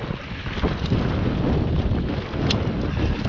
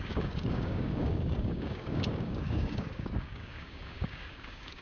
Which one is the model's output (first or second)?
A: second